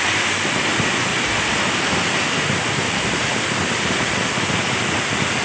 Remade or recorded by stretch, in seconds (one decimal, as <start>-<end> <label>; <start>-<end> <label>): 0.0-1.1 recorded; 1.1-3.4 remade; 3.4-5.4 recorded